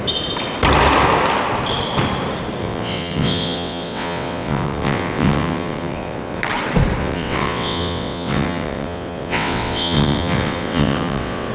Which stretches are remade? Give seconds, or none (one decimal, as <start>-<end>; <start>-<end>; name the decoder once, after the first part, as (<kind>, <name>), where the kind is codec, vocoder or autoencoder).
2.6-6.4 (vocoder, WaveNeXt); 7.0-11.5